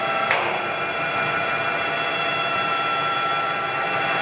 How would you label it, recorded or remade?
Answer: remade